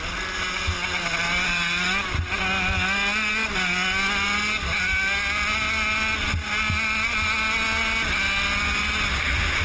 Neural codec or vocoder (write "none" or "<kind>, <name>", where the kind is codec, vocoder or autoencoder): none